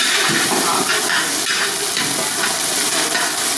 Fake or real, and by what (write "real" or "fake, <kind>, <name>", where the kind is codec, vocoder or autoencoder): real